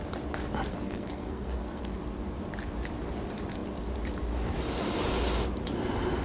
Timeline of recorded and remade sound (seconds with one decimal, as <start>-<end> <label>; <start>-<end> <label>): 0.0-0.7 recorded; 0.7-2.0 remade; 2.0-6.2 recorded